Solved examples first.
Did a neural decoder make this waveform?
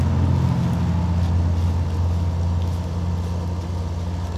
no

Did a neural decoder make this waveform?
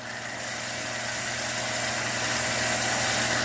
no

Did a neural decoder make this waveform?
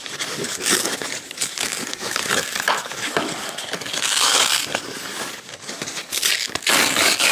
yes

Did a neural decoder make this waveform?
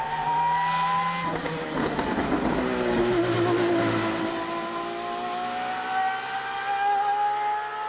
no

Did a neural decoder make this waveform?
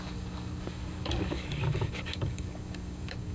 yes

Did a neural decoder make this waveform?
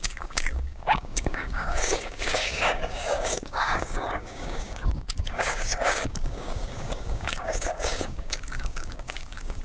yes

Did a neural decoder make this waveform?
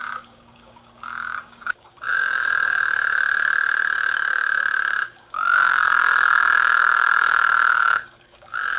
yes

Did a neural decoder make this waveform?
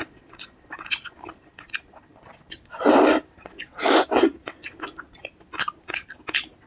no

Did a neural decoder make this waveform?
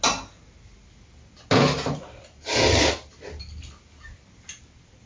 no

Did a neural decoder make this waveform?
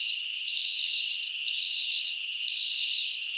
yes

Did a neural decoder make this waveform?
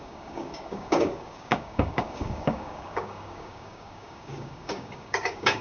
yes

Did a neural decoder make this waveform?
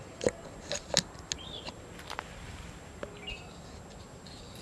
no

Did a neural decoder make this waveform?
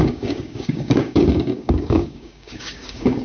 yes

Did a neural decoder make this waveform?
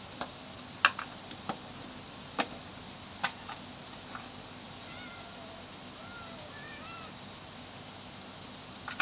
no